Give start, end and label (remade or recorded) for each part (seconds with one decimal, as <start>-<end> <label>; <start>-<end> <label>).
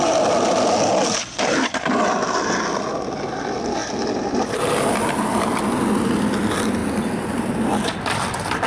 0.0-8.7 recorded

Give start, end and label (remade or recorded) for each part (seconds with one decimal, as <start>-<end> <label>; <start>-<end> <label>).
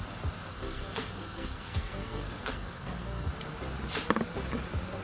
0.0-0.5 recorded; 0.5-3.3 remade; 3.3-5.0 recorded